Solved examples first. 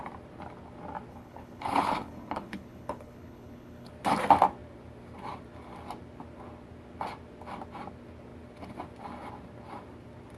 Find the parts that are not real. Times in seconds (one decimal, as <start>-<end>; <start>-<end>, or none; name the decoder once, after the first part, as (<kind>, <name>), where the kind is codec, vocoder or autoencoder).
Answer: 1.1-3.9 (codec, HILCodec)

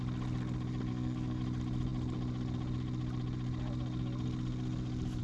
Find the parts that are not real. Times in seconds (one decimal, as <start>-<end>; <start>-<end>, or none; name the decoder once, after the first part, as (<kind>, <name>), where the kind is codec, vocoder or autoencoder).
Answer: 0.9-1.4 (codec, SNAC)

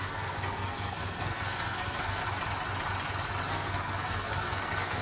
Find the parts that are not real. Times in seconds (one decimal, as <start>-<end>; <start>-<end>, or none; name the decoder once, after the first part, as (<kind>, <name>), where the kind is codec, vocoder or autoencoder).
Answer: 0.0-2.2 (codec, SNAC); 3.5-5.0

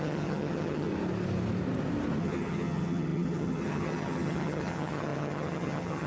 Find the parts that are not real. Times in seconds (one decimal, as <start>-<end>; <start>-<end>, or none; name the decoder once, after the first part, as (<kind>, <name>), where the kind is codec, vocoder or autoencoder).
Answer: 0.0-0.9 (vocoder, HiFi-GAN); 2.2-6.1

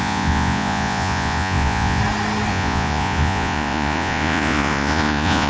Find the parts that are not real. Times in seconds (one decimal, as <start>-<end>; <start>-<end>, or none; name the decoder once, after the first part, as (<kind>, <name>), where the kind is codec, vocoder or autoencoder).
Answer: 0.0-2.0 (vocoder, Vocos); 2.5-5.5